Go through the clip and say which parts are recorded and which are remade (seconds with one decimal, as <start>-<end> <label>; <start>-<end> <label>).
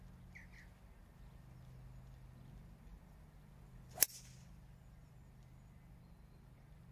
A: 0.0-6.9 recorded